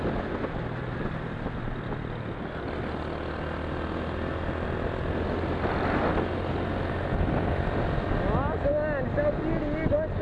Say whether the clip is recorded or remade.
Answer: recorded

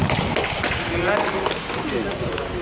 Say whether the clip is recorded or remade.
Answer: recorded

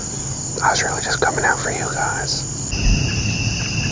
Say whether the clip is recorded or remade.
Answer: recorded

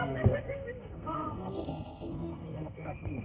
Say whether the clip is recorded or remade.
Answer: remade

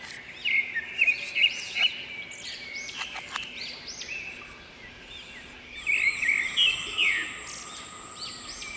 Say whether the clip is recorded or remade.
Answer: recorded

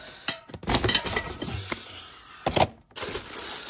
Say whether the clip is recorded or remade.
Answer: recorded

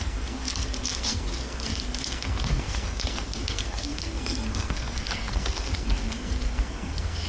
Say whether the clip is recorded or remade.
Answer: remade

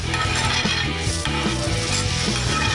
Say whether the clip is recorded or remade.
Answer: recorded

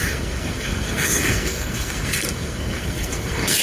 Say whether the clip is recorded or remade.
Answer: remade